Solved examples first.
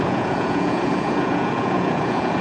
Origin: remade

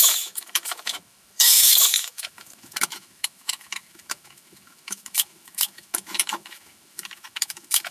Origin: remade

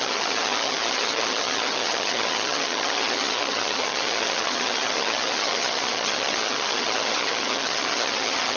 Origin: remade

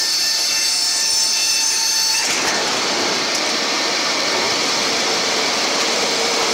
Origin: remade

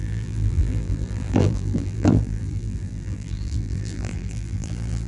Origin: remade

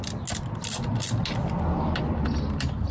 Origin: recorded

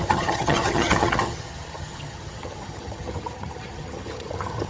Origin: remade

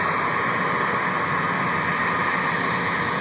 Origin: recorded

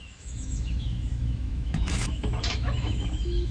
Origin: remade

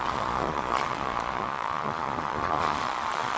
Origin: remade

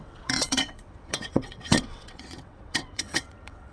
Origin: remade